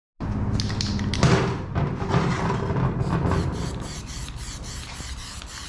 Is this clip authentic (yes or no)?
yes